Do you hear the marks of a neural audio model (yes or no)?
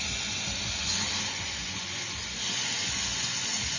yes